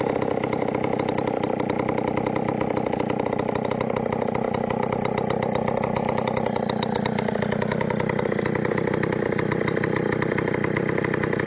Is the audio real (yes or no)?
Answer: yes